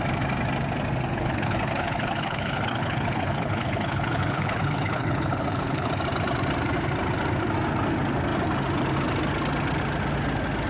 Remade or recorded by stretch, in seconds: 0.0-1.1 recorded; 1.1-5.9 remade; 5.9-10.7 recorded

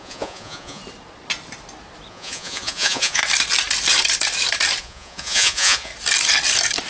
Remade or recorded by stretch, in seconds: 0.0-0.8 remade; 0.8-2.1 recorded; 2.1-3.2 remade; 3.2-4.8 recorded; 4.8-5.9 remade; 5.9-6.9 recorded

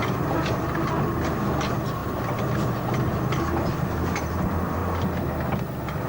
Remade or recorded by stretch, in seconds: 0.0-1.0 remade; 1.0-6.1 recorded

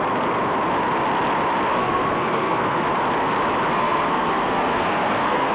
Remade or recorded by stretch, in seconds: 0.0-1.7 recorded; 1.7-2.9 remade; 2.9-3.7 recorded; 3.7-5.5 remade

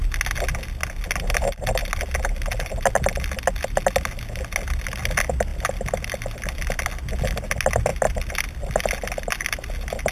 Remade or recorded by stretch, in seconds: 0.0-10.1 recorded